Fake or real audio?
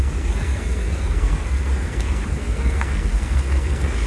fake